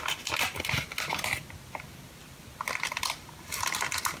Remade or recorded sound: recorded